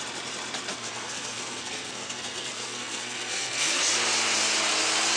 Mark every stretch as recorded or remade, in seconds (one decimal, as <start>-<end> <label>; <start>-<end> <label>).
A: 0.0-0.7 recorded; 0.7-3.8 remade; 3.8-5.2 recorded